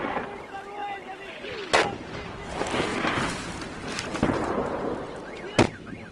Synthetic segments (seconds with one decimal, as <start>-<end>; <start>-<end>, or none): none